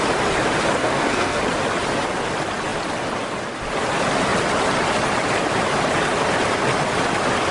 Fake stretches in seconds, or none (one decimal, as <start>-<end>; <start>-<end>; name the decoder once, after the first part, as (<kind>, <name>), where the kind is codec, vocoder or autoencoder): 0.8-1.4 (codec, SNAC)